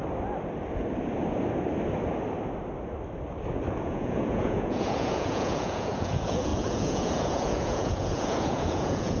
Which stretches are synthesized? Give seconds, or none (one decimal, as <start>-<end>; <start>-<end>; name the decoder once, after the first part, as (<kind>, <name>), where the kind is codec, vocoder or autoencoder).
3.8-9.2 (vocoder, Vocos)